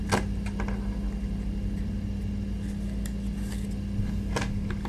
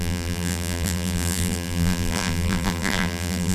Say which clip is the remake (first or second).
second